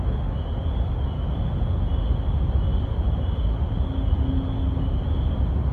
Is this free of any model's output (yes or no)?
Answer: yes